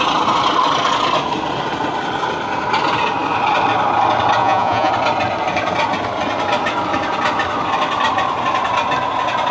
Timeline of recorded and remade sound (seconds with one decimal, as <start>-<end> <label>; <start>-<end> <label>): 0.0-4.4 recorded; 4.4-4.9 remade; 4.9-9.5 recorded